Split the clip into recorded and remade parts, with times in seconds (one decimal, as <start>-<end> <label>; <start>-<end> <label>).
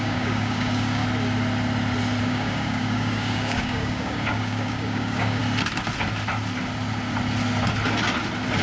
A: 0.0-1.0 remade; 1.0-2.2 recorded; 2.2-5.4 remade; 5.4-8.6 recorded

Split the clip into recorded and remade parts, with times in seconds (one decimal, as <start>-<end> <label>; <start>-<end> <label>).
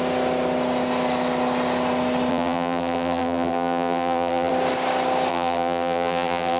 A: 0.0-2.3 recorded; 2.3-4.5 remade; 4.5-5.3 recorded; 5.3-6.6 remade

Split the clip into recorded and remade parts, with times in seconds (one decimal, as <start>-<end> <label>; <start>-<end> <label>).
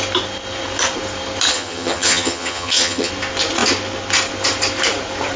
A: 0.0-1.5 recorded; 1.5-3.1 remade; 3.1-5.4 recorded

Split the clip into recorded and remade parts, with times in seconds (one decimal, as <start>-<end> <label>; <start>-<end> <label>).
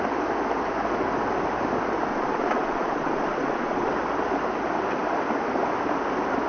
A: 0.0-2.1 recorded; 2.1-3.9 remade; 3.9-6.5 recorded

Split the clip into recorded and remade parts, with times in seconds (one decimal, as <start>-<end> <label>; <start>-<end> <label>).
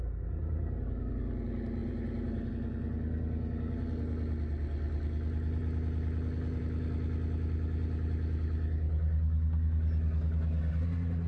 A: 0.0-1.8 recorded; 1.8-2.5 remade; 2.5-11.3 recorded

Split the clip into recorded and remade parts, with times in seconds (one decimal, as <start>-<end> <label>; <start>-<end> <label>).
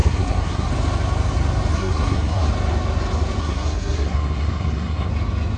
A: 0.0-0.7 remade; 0.7-1.7 recorded; 1.7-2.5 remade; 2.5-3.4 recorded; 3.4-5.1 remade; 5.1-5.6 recorded